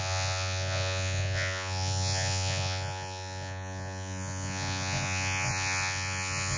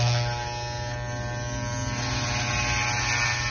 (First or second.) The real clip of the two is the second